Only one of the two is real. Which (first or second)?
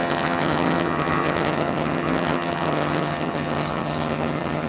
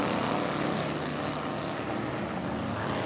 second